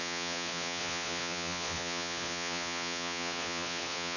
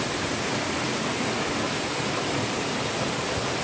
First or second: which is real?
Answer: second